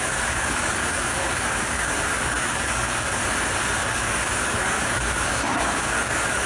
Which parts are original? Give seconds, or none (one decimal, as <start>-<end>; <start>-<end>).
3.2-3.8